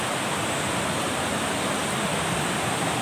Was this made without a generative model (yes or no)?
yes